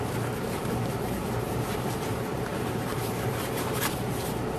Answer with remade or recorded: remade